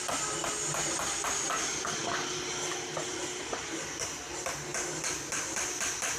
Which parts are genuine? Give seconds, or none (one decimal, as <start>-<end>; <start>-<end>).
0.0-0.4; 4.1-6.2